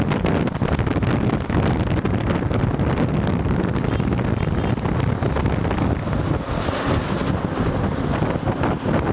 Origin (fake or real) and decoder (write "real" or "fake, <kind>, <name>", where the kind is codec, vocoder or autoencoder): real